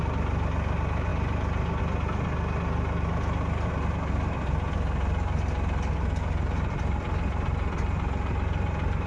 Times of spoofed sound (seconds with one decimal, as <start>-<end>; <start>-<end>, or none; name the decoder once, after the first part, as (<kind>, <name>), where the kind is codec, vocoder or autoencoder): none